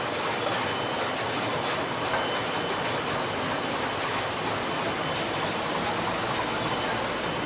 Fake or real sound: real